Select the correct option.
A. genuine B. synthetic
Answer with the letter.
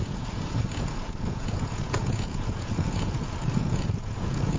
B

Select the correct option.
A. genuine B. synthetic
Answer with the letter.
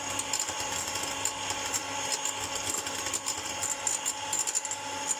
A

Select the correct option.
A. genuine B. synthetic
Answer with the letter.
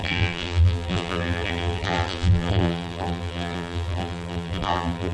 B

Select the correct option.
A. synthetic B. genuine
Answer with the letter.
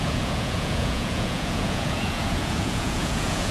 A